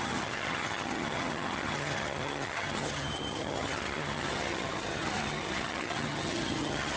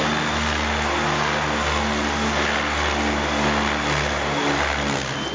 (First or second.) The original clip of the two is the second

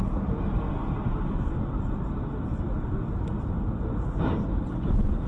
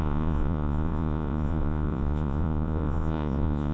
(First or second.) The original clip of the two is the first